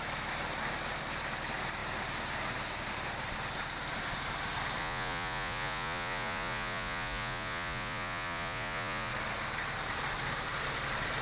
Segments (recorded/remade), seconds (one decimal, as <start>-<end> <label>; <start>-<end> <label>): 0.0-4.8 recorded; 4.8-9.1 remade; 9.1-11.2 recorded